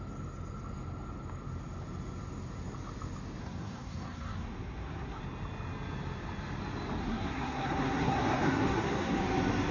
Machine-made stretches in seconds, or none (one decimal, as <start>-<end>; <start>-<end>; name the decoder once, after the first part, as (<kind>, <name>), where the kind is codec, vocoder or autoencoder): 3.4-5.2 (codec, SNAC); 7.0-9.2